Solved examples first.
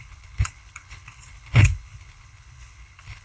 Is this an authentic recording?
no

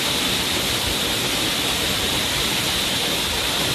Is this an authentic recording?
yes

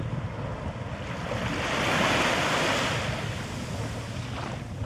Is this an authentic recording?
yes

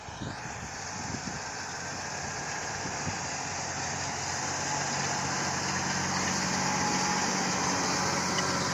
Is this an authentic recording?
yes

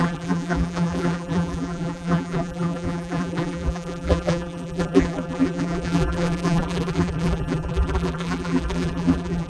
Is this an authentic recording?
no